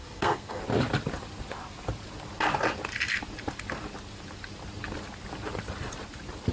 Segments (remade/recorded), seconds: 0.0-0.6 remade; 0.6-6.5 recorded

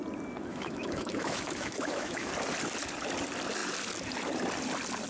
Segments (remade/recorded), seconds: 0.0-0.5 recorded; 0.5-2.3 remade; 2.3-5.1 recorded

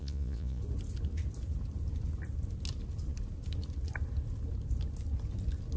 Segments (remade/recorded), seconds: 0.0-0.6 remade; 0.6-5.8 recorded

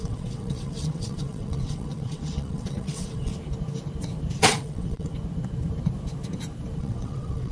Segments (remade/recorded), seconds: 0.0-3.3 remade; 3.3-4.4 recorded; 4.4-5.1 remade; 5.1-6.8 recorded; 6.8-7.5 remade